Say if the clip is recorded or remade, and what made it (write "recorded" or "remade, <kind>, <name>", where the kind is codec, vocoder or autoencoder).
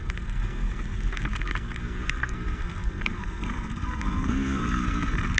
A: remade, codec, SNAC